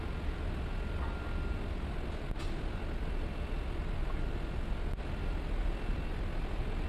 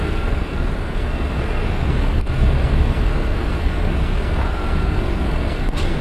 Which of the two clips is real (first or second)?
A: first